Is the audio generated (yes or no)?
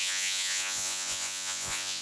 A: yes